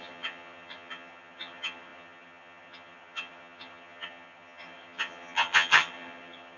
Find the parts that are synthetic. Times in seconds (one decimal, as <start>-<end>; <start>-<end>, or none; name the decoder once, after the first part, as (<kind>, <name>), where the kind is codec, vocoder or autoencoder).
0.0-6.6 (vocoder, HiFi-GAN)